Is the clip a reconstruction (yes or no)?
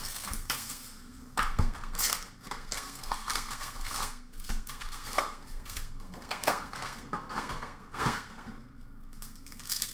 yes